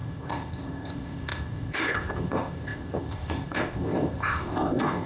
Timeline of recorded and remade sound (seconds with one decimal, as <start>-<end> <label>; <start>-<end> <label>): 0.0-5.1 remade